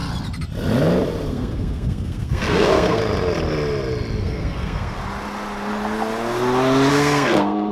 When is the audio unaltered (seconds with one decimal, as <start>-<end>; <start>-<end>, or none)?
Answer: 0.0-1.3; 3.0-4.2; 5.0-6.9